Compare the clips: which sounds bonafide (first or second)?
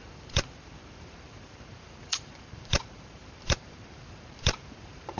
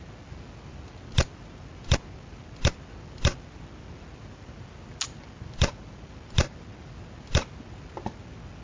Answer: second